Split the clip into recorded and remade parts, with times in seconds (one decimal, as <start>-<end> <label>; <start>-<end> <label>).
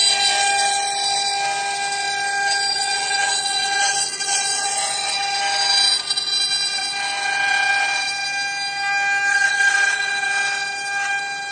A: 0.0-2.7 recorded; 2.7-5.2 remade; 5.2-9.3 recorded; 9.3-10.1 remade; 10.1-11.5 recorded